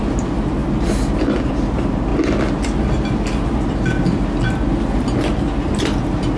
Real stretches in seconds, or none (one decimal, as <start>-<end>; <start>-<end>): 0.0-6.4